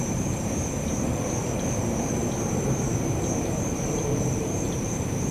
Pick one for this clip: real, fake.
fake